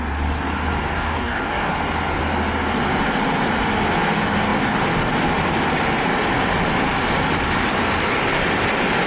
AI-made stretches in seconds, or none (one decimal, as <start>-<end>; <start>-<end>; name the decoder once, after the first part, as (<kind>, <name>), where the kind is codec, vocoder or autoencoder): 1.0-1.7 (codec, DAC)